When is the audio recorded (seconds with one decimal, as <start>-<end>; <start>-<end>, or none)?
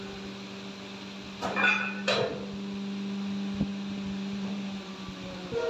0.0-3.7; 4.9-5.7